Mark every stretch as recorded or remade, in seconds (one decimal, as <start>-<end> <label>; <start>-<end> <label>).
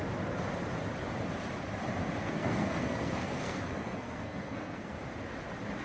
0.0-2.2 recorded; 2.2-5.0 remade; 5.0-5.8 recorded